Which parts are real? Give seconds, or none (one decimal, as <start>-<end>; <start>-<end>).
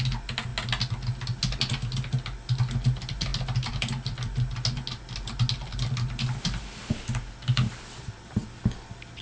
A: 0.0-9.2